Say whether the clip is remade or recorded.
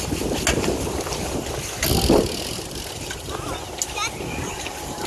recorded